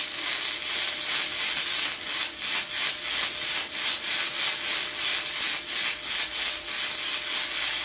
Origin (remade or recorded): recorded